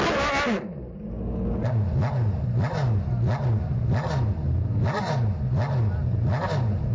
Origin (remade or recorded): recorded